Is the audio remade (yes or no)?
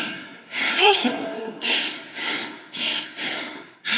yes